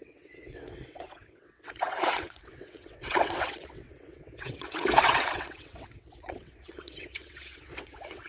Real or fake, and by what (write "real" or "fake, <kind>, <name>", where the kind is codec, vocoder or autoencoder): fake, vocoder, WaveNeXt